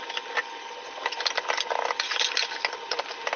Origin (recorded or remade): recorded